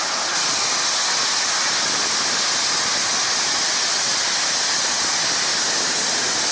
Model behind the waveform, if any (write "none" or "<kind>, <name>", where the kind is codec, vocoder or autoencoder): none